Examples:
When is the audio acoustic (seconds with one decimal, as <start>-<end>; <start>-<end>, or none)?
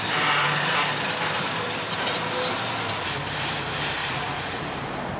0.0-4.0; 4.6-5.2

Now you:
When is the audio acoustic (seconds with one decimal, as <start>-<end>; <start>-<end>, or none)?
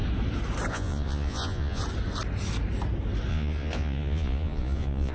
0.0-0.7; 1.8-3.3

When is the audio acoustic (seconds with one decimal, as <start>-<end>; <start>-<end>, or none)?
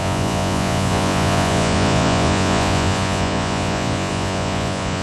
none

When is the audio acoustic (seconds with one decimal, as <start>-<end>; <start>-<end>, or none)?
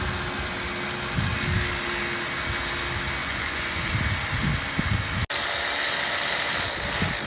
0.0-3.2; 3.9-7.3